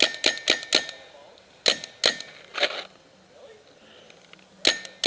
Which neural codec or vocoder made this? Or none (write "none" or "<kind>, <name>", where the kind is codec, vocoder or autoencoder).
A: none